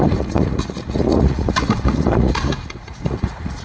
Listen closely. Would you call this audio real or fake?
fake